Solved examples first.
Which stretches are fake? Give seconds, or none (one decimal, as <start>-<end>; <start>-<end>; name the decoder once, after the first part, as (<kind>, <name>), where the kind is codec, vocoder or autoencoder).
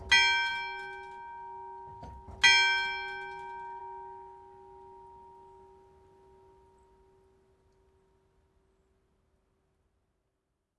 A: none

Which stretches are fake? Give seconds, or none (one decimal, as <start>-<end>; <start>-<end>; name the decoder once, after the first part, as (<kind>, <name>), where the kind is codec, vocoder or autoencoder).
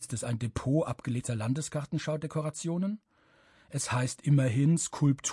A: none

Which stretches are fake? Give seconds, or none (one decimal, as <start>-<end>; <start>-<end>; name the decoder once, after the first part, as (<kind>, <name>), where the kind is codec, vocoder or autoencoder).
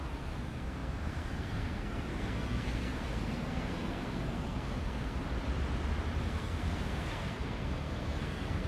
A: 0.0-5.2 (codec, SNAC); 6.2-8.7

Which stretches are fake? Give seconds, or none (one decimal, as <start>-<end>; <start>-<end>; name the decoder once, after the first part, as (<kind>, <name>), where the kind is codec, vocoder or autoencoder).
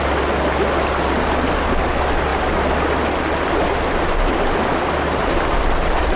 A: none